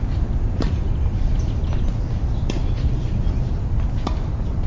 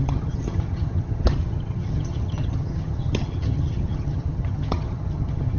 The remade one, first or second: second